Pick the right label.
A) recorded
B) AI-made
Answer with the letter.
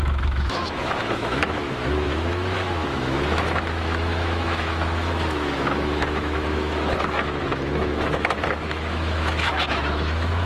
B